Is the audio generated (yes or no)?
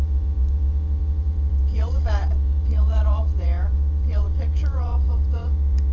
yes